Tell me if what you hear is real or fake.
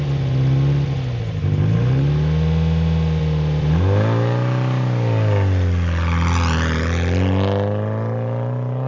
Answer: real